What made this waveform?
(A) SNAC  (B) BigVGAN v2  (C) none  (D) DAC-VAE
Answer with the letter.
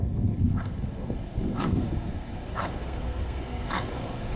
A